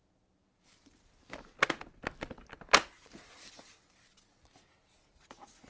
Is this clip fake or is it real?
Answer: real